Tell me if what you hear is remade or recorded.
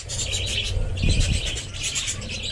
recorded